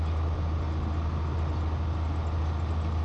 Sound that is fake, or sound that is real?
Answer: real